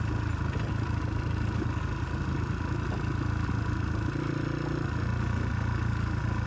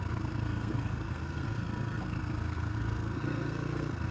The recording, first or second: first